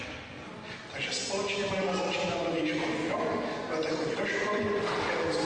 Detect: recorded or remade recorded